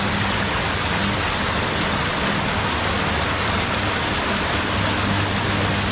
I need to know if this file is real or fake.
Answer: real